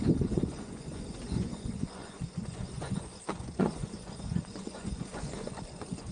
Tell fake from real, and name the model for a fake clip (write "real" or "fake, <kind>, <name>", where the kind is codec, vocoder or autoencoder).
fake, vocoder, Vocos